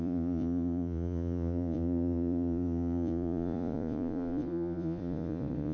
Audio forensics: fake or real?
fake